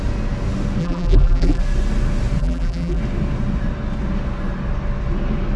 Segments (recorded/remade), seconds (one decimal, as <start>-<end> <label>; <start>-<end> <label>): 0.0-0.8 recorded; 0.8-1.6 remade; 1.6-2.4 recorded; 2.4-3.0 remade; 3.0-5.6 recorded